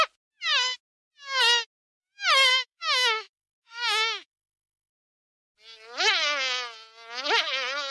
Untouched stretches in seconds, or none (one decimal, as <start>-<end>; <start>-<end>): 0.0-2.5; 4.9-7.9